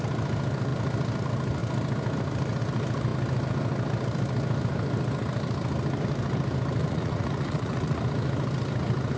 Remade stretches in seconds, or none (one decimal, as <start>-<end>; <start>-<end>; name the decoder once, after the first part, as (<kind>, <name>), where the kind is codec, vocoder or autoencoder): 6.8-8.0 (vocoder, Vocos)